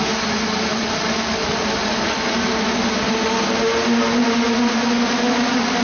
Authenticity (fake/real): real